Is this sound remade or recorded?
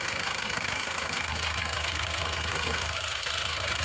remade